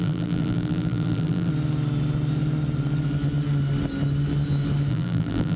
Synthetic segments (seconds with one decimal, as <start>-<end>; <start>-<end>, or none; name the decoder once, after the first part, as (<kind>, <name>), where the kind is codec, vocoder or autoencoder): 0.0-1.5 (vocoder, BigVGAN v2); 4.9-5.6